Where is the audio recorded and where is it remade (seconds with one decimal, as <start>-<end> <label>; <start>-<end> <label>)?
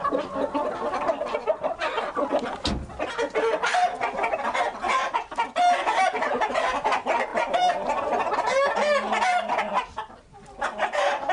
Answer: 0.0-11.3 recorded